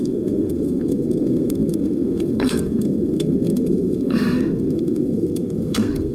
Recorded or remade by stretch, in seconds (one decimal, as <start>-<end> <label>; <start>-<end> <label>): 0.0-6.1 remade